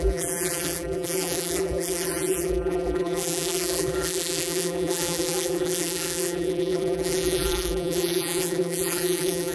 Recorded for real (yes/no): no